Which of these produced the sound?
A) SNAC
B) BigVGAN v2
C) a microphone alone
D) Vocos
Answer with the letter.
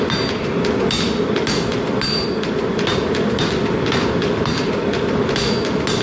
C